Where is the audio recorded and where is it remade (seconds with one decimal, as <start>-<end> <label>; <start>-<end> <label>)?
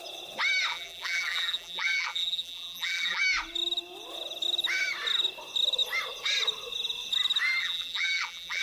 0.0-0.7 recorded; 0.7-3.2 remade; 3.2-7.6 recorded; 7.6-8.6 remade